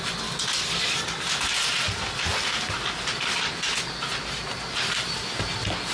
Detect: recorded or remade recorded